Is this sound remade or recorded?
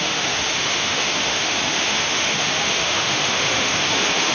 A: remade